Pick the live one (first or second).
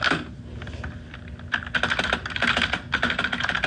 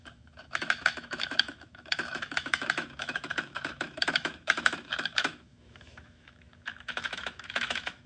first